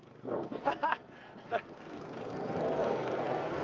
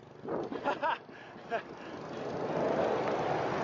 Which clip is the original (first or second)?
second